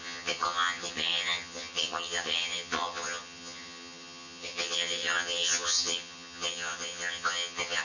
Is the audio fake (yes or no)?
yes